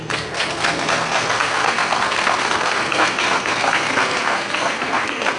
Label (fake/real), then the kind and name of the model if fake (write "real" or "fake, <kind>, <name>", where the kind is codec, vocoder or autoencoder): fake, codec, SNAC